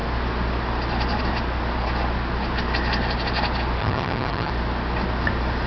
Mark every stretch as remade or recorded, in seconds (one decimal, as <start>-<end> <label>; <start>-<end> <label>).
0.0-3.8 recorded; 3.8-4.5 remade; 4.5-5.7 recorded